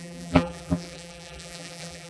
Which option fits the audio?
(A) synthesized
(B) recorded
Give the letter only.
A